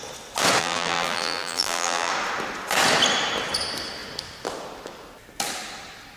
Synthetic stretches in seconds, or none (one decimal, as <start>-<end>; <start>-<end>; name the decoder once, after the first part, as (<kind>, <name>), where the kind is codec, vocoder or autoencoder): 0.6-2.1 (vocoder, BigVGAN v2)